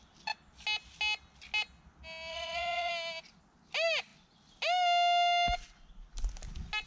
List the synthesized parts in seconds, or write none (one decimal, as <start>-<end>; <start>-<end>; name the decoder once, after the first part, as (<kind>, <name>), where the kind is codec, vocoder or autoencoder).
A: 2.3-2.9 (vocoder, Vocos)